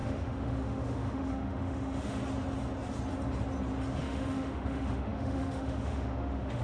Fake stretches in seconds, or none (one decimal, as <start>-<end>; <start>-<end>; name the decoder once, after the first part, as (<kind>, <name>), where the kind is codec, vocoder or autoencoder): 0.0-2.2 (autoencoder, DAC-VAE); 4.0-6.6